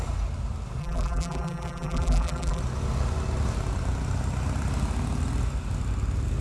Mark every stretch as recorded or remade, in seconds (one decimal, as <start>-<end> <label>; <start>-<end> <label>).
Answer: 0.0-0.8 recorded; 0.8-2.6 remade; 2.6-6.4 recorded